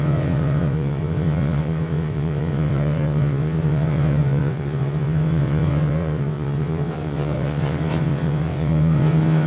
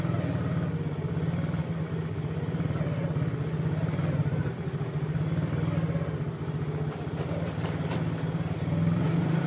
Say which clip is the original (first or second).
second